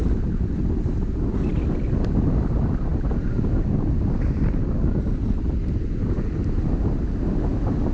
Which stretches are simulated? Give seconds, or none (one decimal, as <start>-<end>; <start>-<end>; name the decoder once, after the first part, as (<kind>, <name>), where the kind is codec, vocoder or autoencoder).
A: none